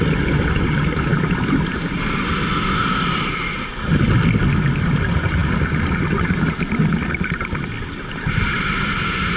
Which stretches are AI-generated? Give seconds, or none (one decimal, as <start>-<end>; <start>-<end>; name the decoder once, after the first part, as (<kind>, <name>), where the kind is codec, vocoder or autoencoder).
none